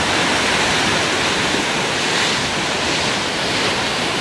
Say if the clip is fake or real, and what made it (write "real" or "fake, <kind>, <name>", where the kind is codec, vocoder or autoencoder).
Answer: real